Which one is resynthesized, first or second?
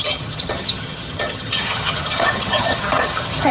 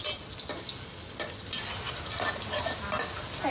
first